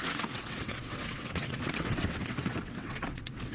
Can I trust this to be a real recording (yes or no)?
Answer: no